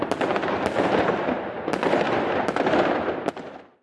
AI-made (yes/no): no